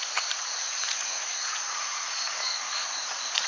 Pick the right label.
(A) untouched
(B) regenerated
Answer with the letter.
B